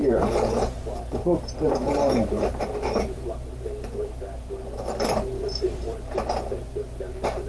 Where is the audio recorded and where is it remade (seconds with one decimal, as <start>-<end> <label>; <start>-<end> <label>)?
0.0-7.5 remade